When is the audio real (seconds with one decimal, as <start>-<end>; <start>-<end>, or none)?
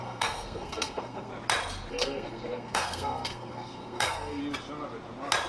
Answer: 1.3-1.9; 4.4-5.5